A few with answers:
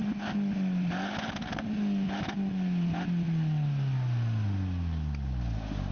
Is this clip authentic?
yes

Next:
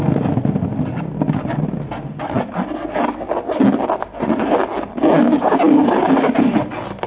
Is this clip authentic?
yes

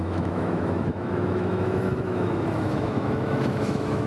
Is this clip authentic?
no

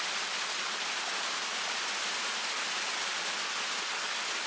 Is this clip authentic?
yes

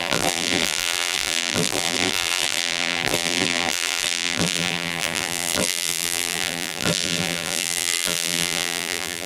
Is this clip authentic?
no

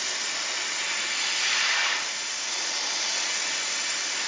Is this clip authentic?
yes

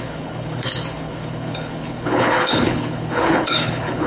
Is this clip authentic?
no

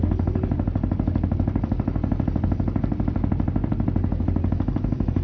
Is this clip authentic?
yes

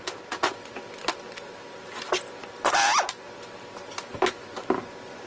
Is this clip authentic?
yes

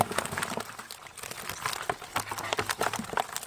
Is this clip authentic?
yes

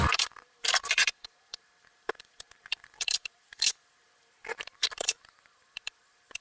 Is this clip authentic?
no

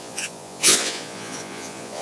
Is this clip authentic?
no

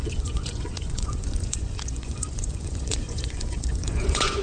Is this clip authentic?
no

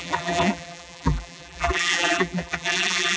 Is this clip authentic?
no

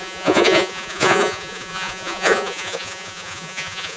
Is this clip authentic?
no